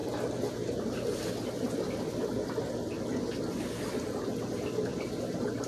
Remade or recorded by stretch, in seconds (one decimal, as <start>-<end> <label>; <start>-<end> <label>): 0.0-4.9 recorded; 4.9-5.7 remade

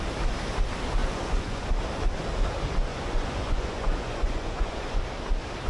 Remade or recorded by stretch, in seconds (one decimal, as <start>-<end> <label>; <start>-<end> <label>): 0.0-1.0 recorded; 1.0-1.7 remade; 1.7-2.9 recorded; 2.9-5.0 remade; 5.0-5.7 recorded